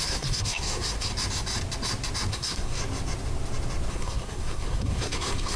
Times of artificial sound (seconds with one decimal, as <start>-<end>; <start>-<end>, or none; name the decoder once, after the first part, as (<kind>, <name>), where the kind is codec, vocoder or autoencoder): 0.0-1.1 (codec, SNAC); 2.3-2.8; 3.9-5.6